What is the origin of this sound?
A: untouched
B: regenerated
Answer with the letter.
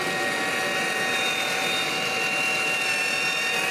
B